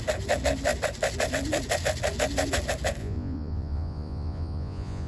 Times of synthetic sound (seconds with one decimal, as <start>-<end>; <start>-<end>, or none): 3.0-5.1